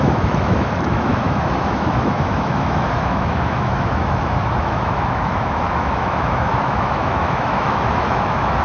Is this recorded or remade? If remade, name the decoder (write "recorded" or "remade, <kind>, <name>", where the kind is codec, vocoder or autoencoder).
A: remade, autoencoder, DAC-VAE